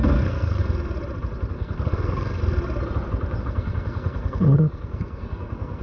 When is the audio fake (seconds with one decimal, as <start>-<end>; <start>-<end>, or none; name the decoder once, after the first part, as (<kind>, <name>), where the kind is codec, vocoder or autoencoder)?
0.0-0.6 (codec, SNAC); 1.5-2.4; 3.4-5.8